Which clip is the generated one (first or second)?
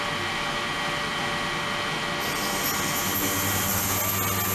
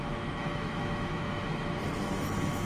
second